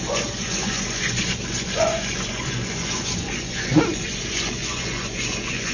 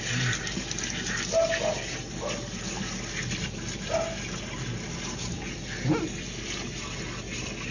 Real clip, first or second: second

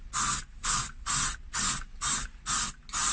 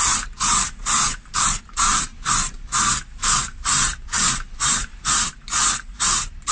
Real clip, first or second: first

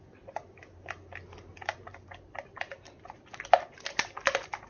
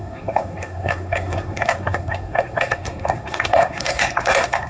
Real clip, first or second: first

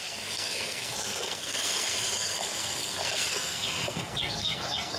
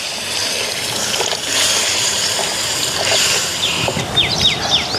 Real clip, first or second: second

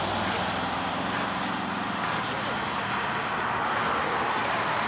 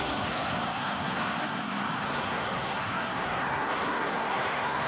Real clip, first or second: first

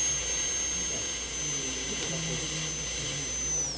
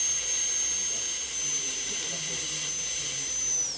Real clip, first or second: first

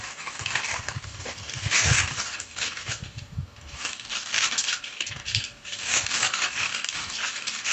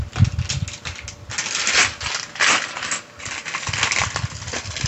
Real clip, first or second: second